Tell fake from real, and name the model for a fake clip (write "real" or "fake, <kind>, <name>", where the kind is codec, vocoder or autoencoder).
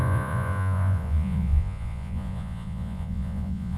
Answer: fake, vocoder, Vocos